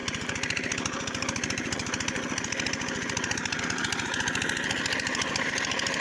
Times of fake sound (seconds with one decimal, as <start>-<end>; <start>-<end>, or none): none

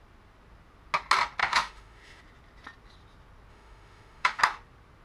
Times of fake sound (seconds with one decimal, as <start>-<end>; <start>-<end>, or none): 1.4-2.2; 3.5-4.4

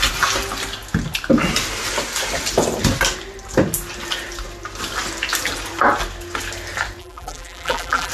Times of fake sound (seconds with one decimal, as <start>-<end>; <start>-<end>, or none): 7.0-8.1

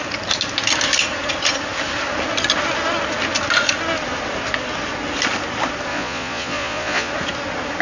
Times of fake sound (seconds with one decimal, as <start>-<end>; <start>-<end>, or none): 5.9-7.1

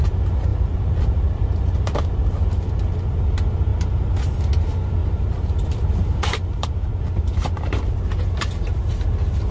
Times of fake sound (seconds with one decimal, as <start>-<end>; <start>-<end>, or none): 0.5-2.1; 5.0-8.0